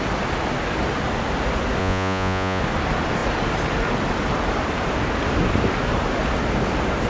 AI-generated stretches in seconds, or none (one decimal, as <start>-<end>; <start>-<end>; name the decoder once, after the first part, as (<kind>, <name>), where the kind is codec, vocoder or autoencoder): 1.8-2.6 (vocoder, Vocos)